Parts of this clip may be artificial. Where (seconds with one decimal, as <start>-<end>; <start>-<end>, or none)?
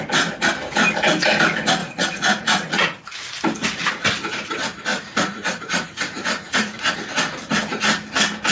1.8-3.1; 4.9-6.9